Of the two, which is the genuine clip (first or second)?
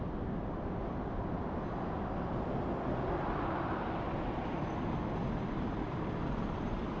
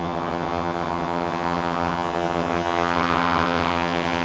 first